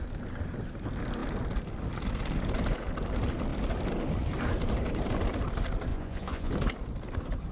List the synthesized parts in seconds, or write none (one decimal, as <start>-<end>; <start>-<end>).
5.9-6.5